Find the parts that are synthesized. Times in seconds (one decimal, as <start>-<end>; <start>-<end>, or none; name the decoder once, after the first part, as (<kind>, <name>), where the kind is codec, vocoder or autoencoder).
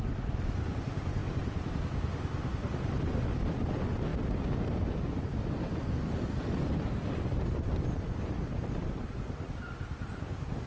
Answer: none